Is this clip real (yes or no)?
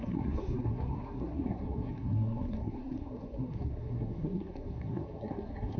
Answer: no